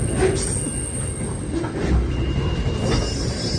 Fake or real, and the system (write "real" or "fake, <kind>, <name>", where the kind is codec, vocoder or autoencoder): real